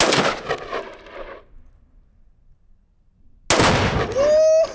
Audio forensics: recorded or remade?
recorded